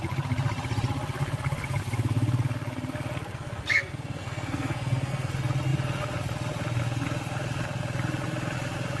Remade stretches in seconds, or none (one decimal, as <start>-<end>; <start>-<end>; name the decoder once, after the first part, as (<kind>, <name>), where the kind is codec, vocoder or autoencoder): 3.3-5.3 (codec, SNAC)